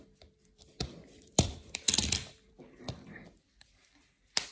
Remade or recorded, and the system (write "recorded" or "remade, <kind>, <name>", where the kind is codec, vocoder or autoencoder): remade, vocoder, BigVGAN v2